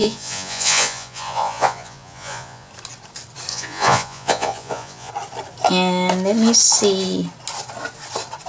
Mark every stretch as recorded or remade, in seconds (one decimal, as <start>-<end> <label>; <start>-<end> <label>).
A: 0.0-2.7 remade; 2.7-3.5 recorded; 3.5-5.1 remade; 5.1-8.5 recorded